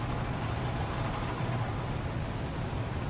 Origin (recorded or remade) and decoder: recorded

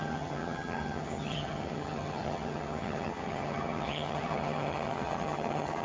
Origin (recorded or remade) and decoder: remade, vocoder, HiFi-GAN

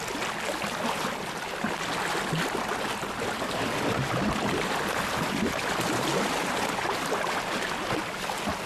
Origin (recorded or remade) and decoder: recorded